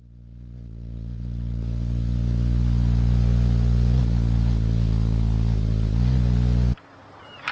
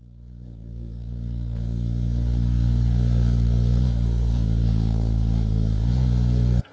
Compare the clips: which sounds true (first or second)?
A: first